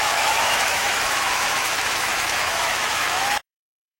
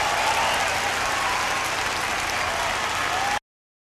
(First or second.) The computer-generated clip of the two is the first